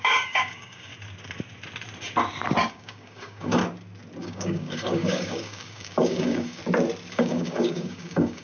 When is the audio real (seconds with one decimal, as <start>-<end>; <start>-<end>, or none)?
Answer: 0.9-2.7; 3.6-4.2; 6.6-7.1